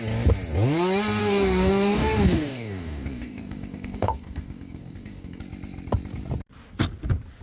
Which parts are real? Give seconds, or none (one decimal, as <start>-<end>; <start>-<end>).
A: 0.0-1.2; 5.4-7.4